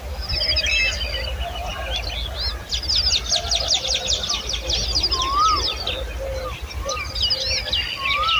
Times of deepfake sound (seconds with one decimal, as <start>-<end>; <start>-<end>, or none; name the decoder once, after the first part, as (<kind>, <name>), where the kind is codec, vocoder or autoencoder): none